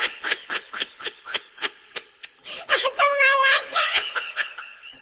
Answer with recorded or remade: remade